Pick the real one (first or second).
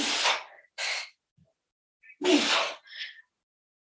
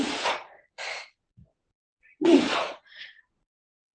first